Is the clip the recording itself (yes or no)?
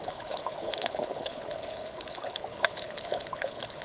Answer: no